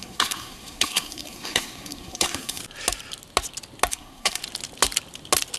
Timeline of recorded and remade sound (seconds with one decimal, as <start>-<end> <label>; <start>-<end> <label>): 0.0-2.6 remade; 2.6-3.9 recorded; 3.9-4.4 remade; 4.4-5.6 recorded